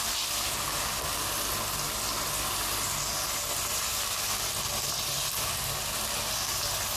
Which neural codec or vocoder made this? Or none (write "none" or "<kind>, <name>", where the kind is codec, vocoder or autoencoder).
none